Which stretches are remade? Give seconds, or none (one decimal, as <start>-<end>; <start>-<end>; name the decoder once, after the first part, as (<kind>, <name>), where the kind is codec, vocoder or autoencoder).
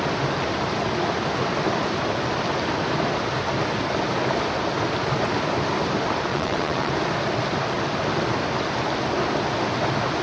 6.3-6.9 (vocoder, WaveNeXt)